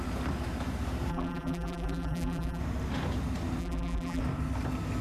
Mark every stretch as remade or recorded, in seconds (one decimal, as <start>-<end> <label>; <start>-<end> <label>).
0.0-1.1 recorded; 1.1-2.6 remade; 2.6-3.6 recorded; 3.6-4.2 remade; 4.2-5.0 recorded